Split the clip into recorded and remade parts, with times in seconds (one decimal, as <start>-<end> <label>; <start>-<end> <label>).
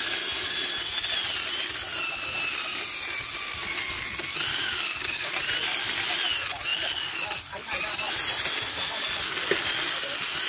0.0-4.5 recorded; 4.5-5.3 remade; 5.3-10.5 recorded